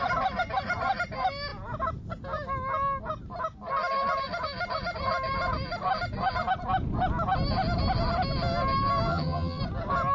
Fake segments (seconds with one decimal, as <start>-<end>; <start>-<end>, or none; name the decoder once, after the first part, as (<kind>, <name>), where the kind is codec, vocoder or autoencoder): 9.1-9.6 (vocoder, HiFi-GAN)